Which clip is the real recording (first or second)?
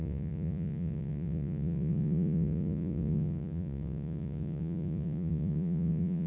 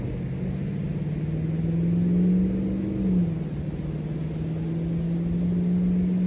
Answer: second